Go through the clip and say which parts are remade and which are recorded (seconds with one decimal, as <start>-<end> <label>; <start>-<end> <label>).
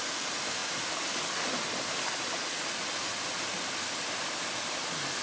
0.0-5.2 recorded